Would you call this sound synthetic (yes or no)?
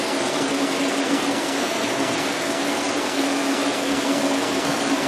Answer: yes